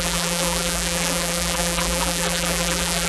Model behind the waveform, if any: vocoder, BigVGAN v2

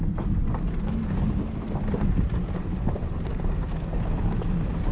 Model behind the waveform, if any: none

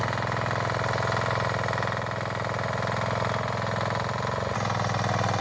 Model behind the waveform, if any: none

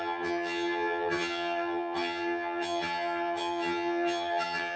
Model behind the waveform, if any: vocoder, HiFi-GAN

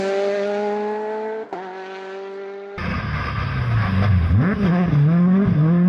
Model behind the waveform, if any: none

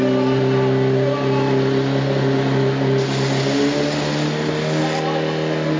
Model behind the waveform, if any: none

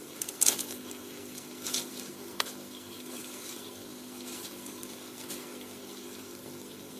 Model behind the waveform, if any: codec, SNAC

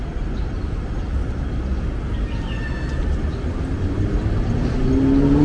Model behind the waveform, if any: none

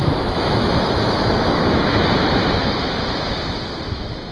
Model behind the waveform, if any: autoencoder, DAC-VAE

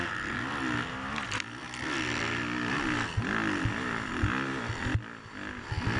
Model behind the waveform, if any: none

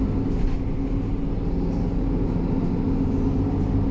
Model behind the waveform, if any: none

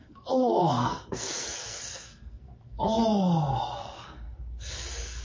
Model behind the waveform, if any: codec, SNAC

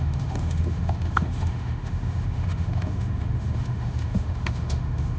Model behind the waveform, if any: autoencoder, DAC-VAE